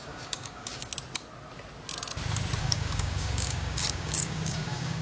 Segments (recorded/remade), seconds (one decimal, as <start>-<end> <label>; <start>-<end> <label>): 0.0-0.9 remade; 0.9-2.6 recorded; 2.6-5.0 remade